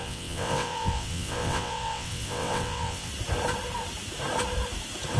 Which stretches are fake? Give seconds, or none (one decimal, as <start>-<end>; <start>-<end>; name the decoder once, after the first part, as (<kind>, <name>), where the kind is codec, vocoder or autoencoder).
0.0-3.1 (vocoder, WaveNeXt)